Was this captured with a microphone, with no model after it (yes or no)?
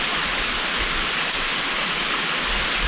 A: yes